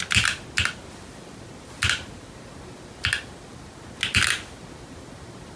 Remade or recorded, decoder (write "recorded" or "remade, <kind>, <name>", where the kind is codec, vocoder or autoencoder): recorded